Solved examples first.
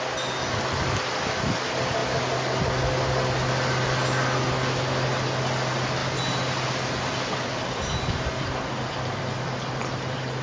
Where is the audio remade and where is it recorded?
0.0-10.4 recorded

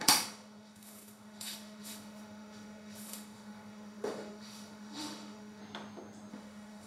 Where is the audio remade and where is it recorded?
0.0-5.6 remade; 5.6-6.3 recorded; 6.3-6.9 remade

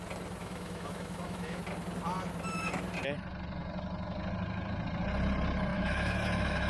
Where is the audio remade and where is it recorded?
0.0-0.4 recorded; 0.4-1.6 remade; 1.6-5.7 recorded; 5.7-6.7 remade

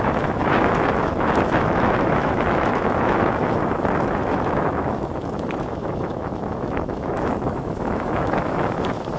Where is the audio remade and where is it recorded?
0.0-9.2 remade